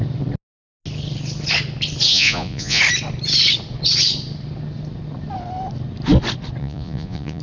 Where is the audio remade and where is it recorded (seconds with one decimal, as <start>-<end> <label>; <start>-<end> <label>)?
0.0-2.1 recorded; 2.1-2.8 remade; 2.8-6.6 recorded; 6.6-7.4 remade